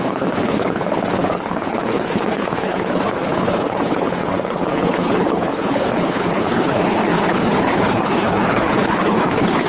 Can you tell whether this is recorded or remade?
remade